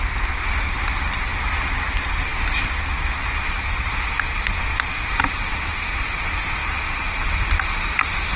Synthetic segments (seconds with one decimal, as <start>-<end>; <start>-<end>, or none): 6.6-7.9